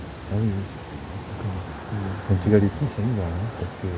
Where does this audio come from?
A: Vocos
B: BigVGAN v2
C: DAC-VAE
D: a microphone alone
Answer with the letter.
D